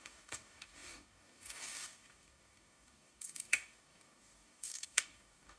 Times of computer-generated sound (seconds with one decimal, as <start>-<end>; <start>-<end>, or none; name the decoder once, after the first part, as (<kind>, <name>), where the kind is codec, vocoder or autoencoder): 0.0-5.6 (codec, DAC)